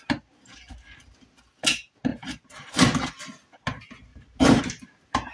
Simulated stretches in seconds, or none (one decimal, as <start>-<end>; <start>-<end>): 2.1-3.1; 4.1-4.6